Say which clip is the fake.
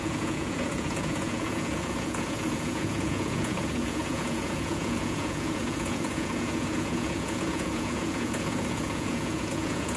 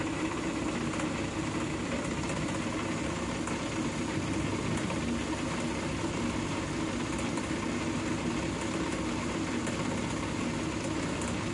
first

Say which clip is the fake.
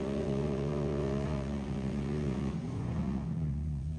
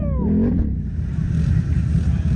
first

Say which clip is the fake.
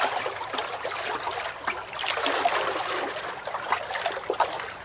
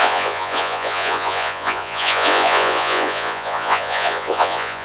second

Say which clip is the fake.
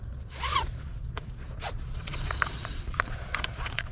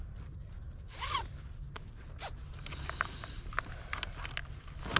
first